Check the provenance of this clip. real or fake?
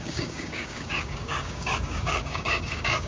fake